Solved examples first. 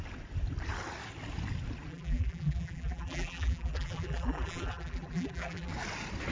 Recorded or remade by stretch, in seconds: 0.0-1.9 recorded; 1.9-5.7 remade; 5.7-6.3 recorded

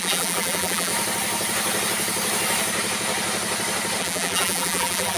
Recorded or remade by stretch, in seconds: 0.0-0.9 remade; 0.9-4.0 recorded; 4.0-5.2 remade

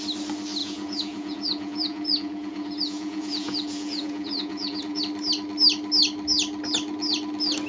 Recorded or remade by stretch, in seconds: 0.0-0.6 recorded; 0.6-5.0 remade; 5.0-7.7 recorded

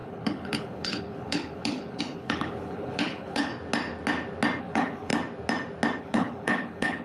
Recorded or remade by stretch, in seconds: 0.0-3.5 remade; 3.5-4.6 recorded; 4.6-5.1 remade; 5.1-6.0 recorded; 6.0-7.0 remade

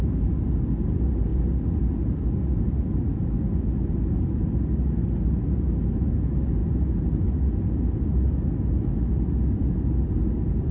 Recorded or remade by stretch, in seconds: 0.0-10.7 recorded

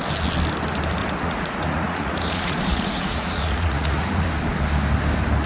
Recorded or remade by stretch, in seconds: 0.0-1.0 recorded; 1.0-4.3 remade; 4.3-5.5 recorded